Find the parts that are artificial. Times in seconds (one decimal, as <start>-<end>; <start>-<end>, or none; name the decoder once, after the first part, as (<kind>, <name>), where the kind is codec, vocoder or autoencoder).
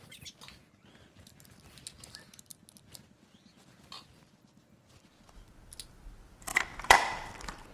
6.5-7.7 (vocoder, BigVGAN v2)